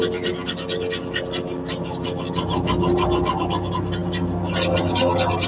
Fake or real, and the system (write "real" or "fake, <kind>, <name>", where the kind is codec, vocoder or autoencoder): real